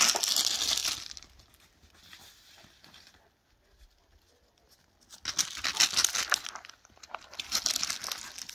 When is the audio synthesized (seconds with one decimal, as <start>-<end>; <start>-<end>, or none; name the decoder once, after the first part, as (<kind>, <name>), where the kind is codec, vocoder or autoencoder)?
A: 5.7-7.1 (vocoder, BigVGAN v2)